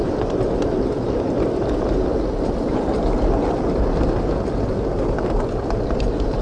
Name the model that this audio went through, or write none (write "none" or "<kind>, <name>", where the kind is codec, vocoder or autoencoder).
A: none